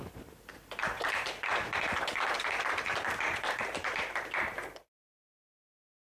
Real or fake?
fake